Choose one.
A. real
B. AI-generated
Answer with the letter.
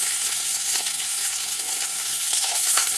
B